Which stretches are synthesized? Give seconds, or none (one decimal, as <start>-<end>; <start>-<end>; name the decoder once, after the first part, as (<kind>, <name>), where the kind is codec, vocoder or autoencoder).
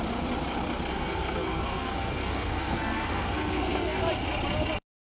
0.9-4.0 (codec, SNAC)